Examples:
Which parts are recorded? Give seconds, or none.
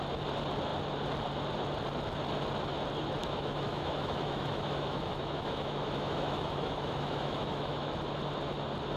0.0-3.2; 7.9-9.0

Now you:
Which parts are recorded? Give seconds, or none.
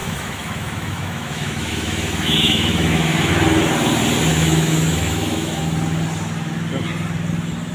3.3-4.3; 5.6-7.7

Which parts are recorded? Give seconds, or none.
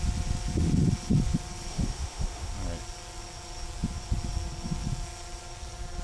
0.0-1.7; 2.5-6.0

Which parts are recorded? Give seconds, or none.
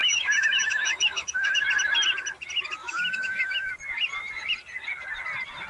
1.6-2.8; 3.7-5.7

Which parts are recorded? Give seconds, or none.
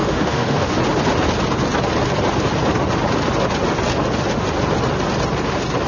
0.7-5.9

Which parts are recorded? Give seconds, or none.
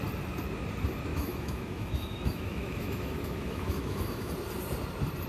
0.0-1.1; 4.3-5.3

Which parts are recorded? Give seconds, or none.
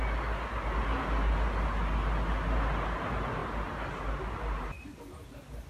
0.0-5.7